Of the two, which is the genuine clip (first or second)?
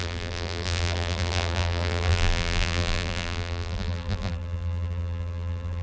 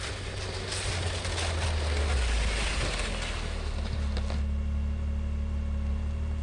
second